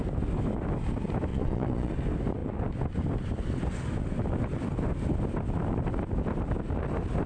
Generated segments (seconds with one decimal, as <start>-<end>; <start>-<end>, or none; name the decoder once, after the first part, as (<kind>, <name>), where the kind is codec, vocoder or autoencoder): 1.3-1.9 (vocoder, Vocos)